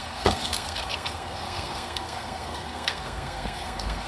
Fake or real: fake